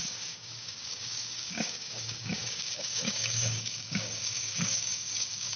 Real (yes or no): no